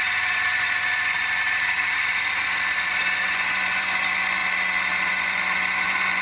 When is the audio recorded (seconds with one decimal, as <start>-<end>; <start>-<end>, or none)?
1.2-3.0; 4.4-5.0